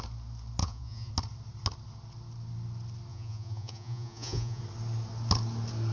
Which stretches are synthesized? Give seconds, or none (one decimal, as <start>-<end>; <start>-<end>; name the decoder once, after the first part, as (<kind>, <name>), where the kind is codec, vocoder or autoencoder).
0.6-1.1 (vocoder, Vocos); 3.1-4.6